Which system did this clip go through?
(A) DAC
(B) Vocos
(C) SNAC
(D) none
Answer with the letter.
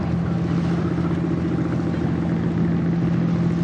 D